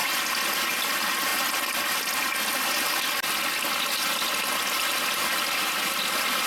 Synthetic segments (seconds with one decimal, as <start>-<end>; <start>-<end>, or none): none